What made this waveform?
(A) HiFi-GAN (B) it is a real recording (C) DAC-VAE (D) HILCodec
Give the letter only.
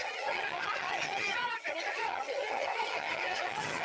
A